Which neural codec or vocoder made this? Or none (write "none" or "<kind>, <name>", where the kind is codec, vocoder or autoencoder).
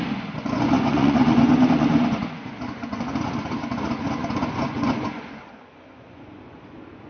vocoder, Vocos